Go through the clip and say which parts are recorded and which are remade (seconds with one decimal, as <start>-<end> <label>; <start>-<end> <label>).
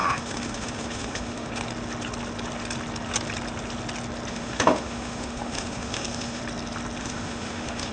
0.0-1.5 remade; 1.5-4.3 recorded; 4.3-6.4 remade; 6.4-7.0 recorded; 7.0-7.9 remade